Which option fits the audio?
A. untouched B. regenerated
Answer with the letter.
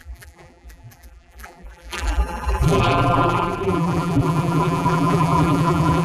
B